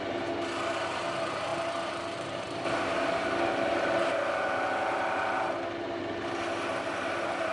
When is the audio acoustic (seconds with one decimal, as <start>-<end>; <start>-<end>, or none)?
0.0-7.5